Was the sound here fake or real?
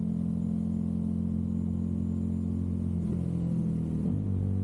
real